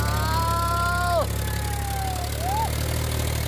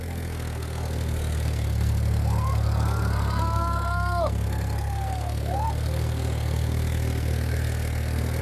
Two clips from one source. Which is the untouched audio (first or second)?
first